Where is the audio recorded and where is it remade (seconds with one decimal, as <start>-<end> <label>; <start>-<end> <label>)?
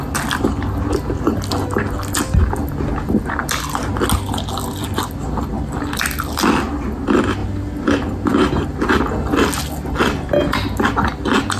0.0-11.6 recorded